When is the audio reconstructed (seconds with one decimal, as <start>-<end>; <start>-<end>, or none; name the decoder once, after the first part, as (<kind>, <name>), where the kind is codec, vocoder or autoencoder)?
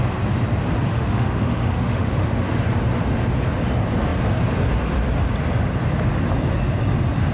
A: 0.9-2.6 (autoencoder, DAC-VAE)